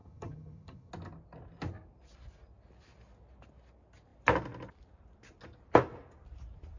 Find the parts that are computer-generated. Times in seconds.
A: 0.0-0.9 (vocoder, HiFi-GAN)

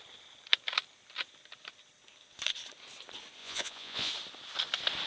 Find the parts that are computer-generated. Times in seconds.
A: 3.4-4.1 (vocoder, Vocos)

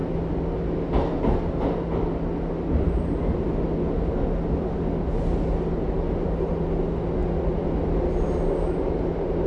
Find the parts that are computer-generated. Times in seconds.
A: none

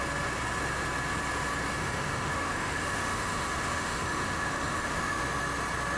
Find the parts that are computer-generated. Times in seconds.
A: 1.8-5.2 (autoencoder, DAC-VAE)

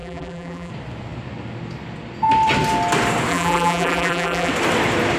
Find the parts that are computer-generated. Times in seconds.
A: 0.0-0.7 (vocoder, BigVGAN v2); 3.3-4.5

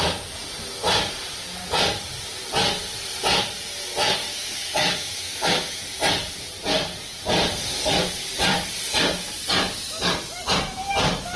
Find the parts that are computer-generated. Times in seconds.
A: 4.2-5.8 (autoencoder, DAC-VAE)